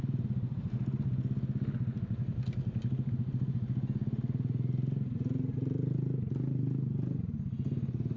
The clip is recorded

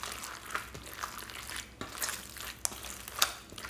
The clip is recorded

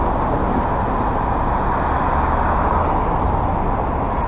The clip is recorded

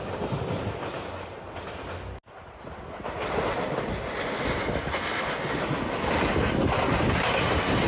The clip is recorded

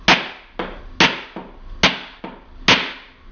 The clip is recorded